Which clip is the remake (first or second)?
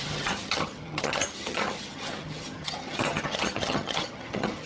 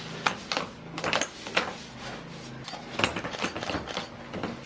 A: first